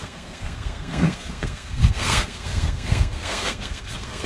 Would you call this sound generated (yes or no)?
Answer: yes